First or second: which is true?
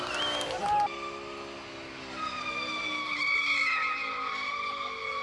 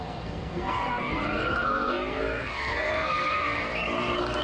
first